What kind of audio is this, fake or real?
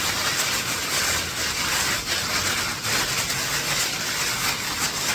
real